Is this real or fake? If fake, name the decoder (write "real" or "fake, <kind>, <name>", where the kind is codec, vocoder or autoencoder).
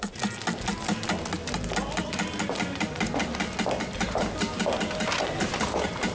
real